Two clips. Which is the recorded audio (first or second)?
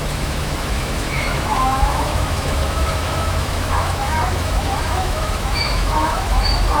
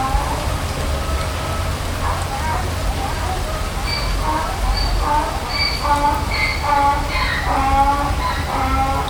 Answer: second